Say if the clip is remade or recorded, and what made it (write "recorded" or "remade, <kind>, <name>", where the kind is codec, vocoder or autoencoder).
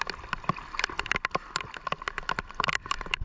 recorded